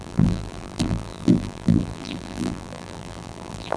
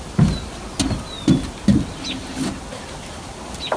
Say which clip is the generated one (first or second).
first